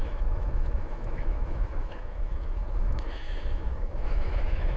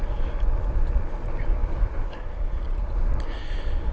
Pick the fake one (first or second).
first